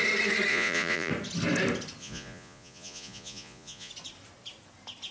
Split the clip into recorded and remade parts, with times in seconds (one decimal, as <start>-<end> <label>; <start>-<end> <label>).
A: 0.0-0.5 recorded; 0.5-1.1 remade; 1.1-2.0 recorded; 2.0-3.9 remade; 3.9-5.1 recorded